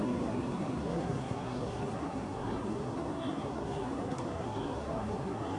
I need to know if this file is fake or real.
fake